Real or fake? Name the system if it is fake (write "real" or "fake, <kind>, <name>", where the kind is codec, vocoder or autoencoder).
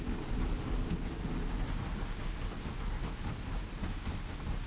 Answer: real